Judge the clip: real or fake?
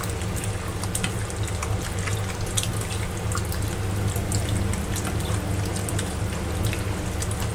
real